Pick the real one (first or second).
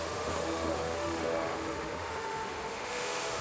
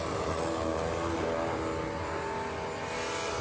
second